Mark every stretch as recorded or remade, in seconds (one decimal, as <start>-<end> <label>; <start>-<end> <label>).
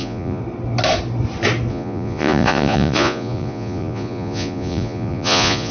0.0-0.4 remade; 0.4-1.7 recorded; 1.7-5.7 remade